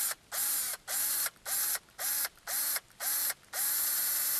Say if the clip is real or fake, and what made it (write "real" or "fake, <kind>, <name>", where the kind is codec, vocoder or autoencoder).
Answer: real